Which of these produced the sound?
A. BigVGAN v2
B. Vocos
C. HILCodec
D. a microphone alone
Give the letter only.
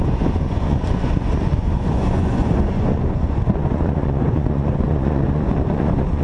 B